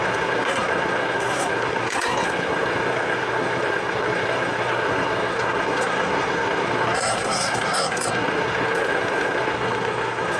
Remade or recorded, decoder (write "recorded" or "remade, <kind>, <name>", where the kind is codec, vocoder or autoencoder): remade, codec, SNAC